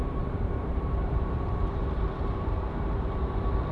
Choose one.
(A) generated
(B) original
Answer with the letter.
A